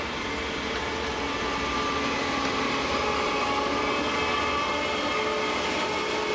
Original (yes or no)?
yes